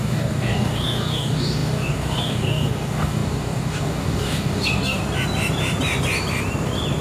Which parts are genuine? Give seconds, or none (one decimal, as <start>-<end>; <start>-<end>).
5.0-7.0